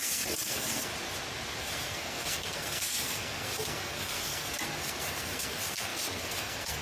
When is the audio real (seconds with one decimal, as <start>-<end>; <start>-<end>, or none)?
0.9-1.6